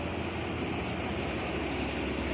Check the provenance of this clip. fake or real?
real